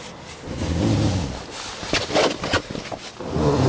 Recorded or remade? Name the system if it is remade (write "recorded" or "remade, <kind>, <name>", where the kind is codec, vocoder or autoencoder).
recorded